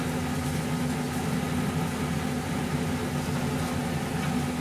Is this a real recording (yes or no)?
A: yes